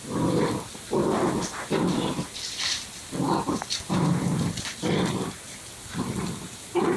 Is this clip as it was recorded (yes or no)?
no